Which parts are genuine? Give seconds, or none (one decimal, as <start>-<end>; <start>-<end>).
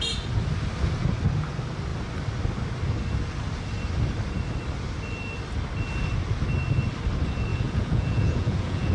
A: 0.0-7.5